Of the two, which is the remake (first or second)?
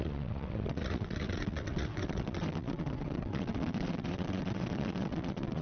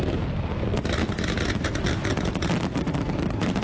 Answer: first